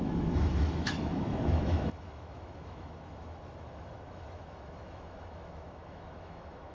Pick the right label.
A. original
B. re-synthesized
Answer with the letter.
B